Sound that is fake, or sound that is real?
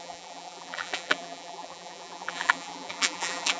fake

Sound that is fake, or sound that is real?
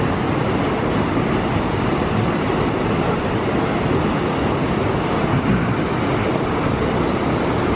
real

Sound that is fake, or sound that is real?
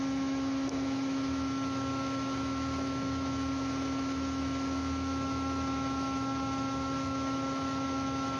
fake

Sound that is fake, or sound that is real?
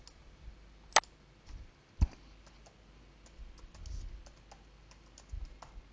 real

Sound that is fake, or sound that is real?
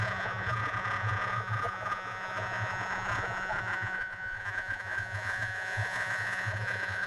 fake